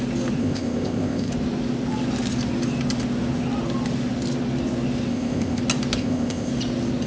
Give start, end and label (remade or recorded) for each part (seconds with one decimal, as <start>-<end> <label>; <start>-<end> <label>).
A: 0.0-0.4 recorded; 0.4-1.3 remade; 1.3-5.1 recorded; 5.1-5.6 remade; 5.6-6.0 recorded; 6.0-6.5 remade; 6.5-7.1 recorded